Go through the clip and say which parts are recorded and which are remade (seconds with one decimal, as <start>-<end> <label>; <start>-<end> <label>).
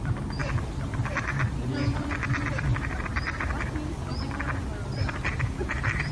0.0-6.1 recorded